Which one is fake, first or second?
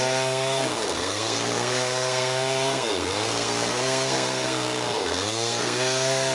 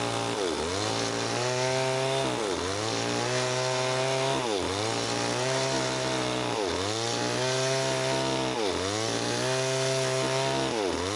first